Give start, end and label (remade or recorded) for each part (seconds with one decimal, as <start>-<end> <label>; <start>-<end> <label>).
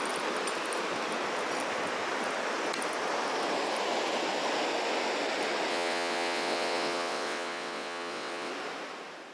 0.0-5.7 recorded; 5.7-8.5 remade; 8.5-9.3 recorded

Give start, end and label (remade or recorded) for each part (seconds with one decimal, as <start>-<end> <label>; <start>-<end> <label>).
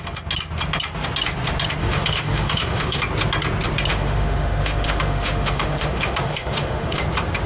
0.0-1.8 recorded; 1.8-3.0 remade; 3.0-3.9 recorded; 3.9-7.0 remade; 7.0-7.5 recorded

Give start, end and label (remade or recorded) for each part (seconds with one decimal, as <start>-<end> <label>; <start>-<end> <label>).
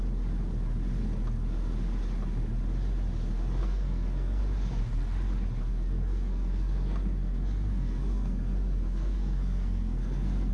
0.0-3.6 recorded; 3.6-4.4 remade; 4.4-5.7 recorded; 5.7-10.5 remade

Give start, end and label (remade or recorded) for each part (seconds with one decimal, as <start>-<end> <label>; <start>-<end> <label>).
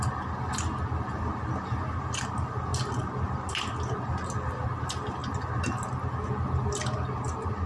0.0-7.7 recorded